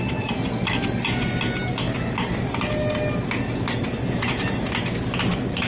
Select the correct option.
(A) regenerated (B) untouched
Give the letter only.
B